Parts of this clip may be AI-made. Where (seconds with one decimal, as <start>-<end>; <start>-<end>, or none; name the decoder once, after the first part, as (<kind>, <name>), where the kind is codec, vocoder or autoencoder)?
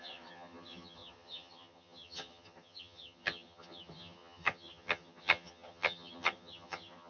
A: 0.0-7.1 (vocoder, HiFi-GAN)